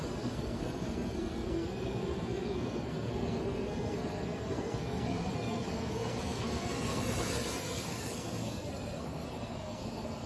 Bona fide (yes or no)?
no